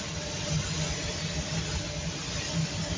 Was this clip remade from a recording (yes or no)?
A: no